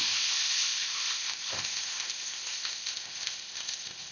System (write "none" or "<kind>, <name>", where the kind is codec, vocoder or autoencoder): codec, ZipCodec